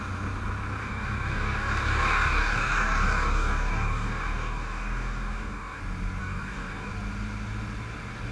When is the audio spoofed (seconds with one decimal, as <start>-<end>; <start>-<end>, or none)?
0.8-5.8; 6.2-6.9